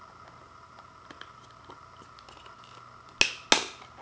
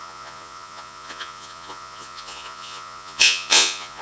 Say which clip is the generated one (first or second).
second